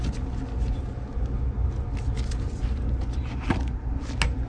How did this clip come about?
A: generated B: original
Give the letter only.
B